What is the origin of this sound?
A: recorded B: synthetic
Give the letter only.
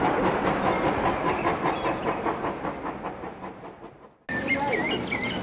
A